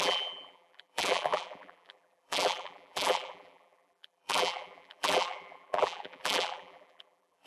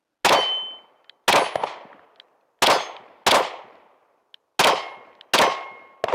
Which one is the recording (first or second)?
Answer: second